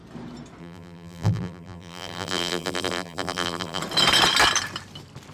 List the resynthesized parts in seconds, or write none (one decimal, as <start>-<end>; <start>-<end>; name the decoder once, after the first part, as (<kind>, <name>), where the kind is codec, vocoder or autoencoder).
0.6-3.8 (vocoder, BigVGAN v2)

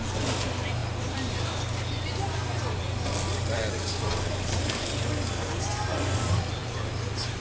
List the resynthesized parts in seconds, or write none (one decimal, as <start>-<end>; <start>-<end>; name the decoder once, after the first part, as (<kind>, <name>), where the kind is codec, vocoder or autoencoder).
4.1-4.8 (vocoder, BigVGAN v2); 6.6-7.4

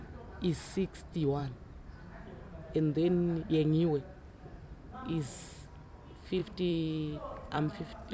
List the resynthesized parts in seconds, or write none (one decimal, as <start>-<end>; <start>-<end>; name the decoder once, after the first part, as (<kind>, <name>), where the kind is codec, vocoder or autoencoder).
6.4-8.1 (vocoder, BigVGAN v2)

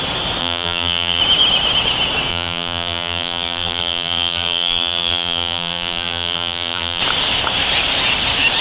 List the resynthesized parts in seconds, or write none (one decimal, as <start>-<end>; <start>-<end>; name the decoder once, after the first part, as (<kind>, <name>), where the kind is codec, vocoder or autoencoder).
0.4-1.2 (vocoder, BigVGAN v2); 2.3-7.0

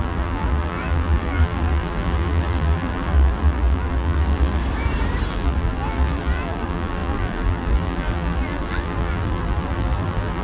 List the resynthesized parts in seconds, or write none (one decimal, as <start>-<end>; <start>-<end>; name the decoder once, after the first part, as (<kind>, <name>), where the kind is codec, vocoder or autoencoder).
0.0-4.6 (vocoder, BigVGAN v2); 5.3-10.4

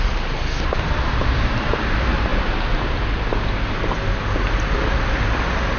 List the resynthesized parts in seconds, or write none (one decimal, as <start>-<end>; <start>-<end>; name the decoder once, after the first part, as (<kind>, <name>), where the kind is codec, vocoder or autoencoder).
none

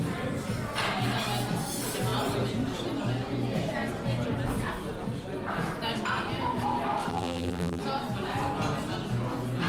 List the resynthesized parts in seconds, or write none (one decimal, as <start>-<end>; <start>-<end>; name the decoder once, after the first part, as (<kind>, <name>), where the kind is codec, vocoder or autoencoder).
7.1-7.8 (vocoder, BigVGAN v2)